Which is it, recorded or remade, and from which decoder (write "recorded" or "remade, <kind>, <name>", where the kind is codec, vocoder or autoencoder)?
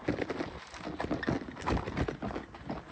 recorded